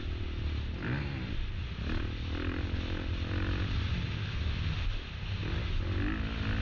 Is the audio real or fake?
real